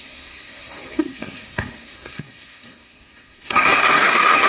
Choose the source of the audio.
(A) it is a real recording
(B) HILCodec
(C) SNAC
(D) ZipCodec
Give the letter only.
C